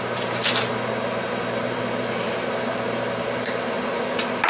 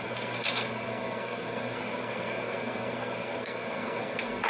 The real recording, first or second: first